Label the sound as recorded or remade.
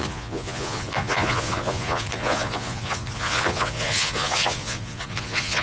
remade